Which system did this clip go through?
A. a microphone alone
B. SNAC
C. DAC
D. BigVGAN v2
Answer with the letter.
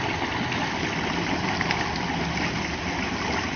A